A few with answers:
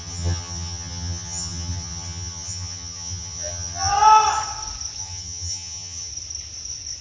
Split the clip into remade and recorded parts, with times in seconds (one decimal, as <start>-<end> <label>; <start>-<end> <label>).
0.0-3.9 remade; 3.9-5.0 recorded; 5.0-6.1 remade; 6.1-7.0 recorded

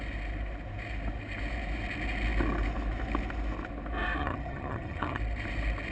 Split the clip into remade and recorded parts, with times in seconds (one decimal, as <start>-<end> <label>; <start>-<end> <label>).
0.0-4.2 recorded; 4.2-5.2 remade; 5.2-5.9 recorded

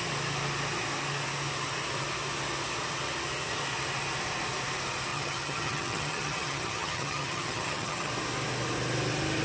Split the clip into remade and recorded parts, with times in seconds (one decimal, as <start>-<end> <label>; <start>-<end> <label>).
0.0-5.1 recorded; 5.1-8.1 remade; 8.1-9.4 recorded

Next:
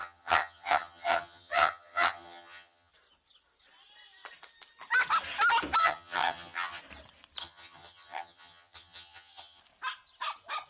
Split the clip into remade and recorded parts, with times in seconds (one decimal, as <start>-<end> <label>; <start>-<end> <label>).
0.0-2.9 remade; 2.9-5.8 recorded; 5.8-6.8 remade; 6.8-7.4 recorded; 7.4-9.6 remade; 9.6-10.7 recorded

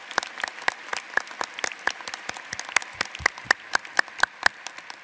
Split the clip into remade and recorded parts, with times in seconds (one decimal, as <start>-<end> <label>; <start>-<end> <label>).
0.0-5.0 recorded

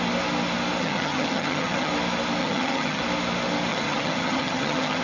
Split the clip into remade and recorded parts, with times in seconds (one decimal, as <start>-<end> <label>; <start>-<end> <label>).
0.0-0.8 recorded; 0.8-1.9 remade; 1.9-2.4 recorded; 2.4-3.0 remade; 3.0-3.7 recorded; 3.7-5.0 remade

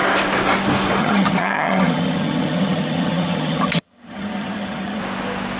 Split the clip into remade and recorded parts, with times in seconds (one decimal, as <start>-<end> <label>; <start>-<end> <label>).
0.0-1.0 recorded; 1.0-5.0 remade; 5.0-5.6 recorded